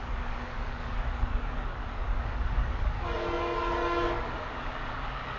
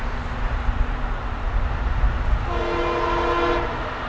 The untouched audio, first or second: second